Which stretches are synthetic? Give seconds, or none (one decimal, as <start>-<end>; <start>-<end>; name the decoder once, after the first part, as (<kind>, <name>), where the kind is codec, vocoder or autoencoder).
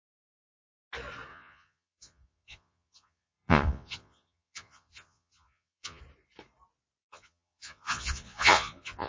1.3-6.0 (vocoder, Vocos); 7.0-9.1